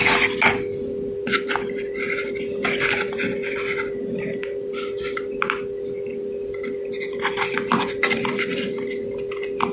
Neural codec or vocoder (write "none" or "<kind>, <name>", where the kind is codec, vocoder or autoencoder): none